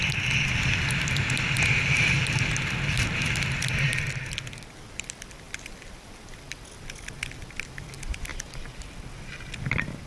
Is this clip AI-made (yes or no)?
no